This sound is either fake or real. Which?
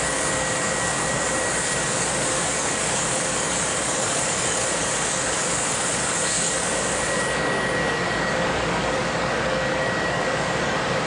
fake